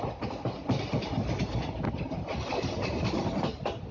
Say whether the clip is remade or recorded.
recorded